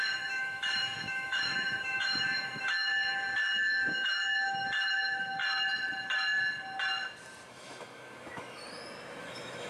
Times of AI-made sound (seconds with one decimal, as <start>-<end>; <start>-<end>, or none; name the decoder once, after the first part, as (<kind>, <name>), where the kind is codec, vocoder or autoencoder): 0.0-5.4 (autoencoder, DAC-VAE); 7.5-8.6; 9.2-9.7